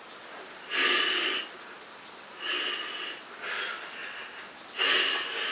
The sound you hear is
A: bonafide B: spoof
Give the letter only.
A